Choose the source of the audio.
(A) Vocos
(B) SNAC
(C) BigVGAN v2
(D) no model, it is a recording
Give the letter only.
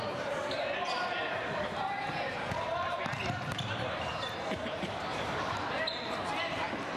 C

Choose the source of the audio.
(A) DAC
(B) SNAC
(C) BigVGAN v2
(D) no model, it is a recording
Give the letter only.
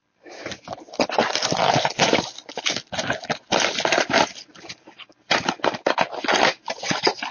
C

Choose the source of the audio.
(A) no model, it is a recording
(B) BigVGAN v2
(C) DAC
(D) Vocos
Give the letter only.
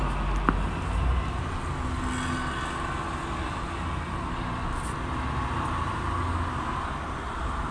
A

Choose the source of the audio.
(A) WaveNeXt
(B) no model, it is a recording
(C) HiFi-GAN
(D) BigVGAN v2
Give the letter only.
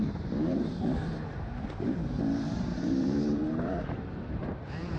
D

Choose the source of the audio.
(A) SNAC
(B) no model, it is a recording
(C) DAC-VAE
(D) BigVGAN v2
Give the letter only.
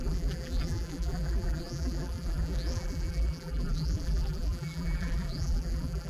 D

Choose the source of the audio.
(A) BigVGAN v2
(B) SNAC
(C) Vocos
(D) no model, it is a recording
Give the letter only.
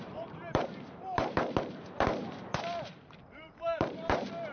A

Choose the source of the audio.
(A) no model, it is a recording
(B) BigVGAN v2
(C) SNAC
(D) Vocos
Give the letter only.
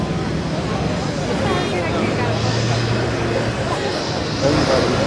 A